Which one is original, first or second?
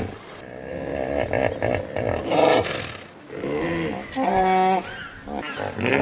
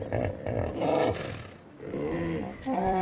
first